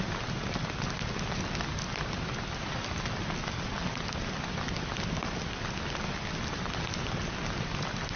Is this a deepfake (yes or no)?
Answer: no